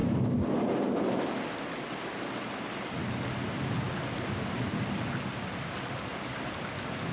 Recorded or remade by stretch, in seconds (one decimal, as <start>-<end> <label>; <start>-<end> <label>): 0.0-7.1 recorded